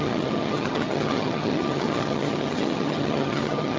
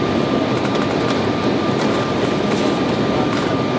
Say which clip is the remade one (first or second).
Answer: first